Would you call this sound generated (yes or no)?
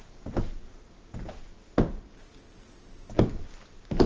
no